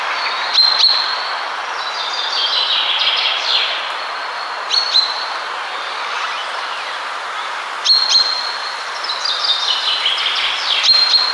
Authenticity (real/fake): real